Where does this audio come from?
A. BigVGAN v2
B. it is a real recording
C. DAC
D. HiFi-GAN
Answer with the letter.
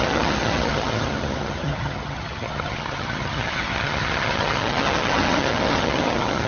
D